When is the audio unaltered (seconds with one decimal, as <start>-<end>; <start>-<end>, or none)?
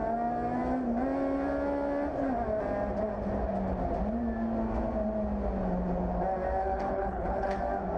0.0-6.6; 7.6-8.0